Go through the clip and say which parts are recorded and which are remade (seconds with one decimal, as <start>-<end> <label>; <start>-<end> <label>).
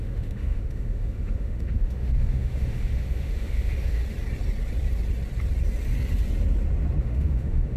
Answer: 0.0-4.0 remade; 4.0-7.0 recorded; 7.0-7.8 remade